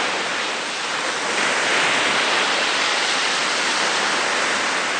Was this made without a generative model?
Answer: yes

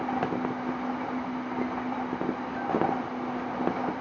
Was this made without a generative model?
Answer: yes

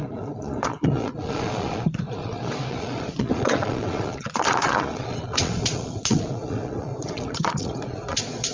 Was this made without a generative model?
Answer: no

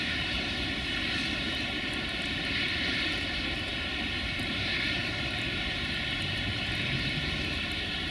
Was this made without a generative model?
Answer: no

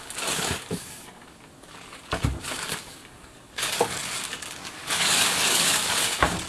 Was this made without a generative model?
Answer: no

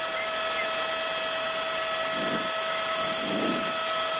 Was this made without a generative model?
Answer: yes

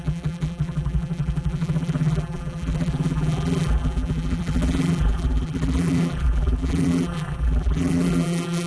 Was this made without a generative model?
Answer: no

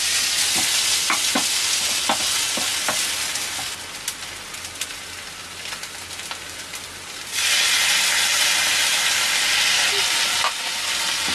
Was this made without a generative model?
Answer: yes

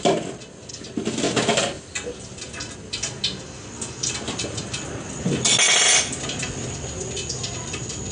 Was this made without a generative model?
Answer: yes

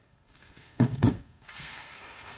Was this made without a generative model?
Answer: no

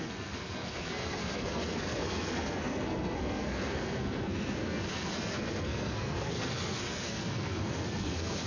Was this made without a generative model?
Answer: no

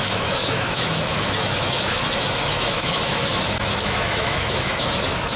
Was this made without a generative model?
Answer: no